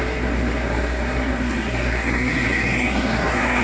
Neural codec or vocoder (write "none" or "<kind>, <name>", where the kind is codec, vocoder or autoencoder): codec, SNAC